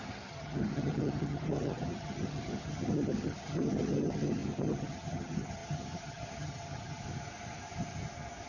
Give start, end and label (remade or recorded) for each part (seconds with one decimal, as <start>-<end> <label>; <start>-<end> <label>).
0.0-7.0 remade; 7.0-8.5 recorded

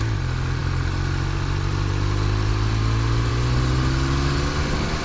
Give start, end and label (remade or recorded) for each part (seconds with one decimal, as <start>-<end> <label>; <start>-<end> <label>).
0.0-5.0 recorded

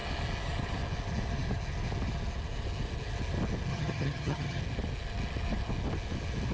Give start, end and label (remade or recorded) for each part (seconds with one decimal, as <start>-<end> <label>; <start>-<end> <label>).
0.0-3.7 recorded; 3.7-4.6 remade; 4.6-6.5 recorded